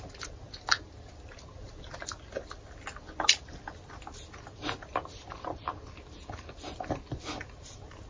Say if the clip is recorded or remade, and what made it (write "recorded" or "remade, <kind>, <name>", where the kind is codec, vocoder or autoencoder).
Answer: recorded